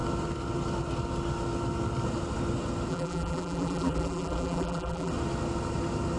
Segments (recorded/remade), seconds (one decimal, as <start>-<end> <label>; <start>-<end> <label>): 0.0-2.9 recorded; 2.9-5.1 remade; 5.1-6.2 recorded